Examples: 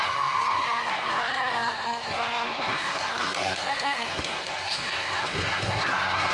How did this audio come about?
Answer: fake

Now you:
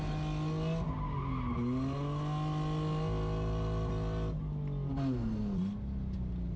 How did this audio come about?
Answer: real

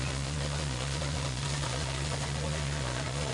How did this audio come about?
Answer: fake